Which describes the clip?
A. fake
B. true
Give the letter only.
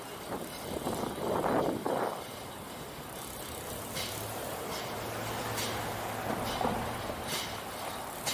B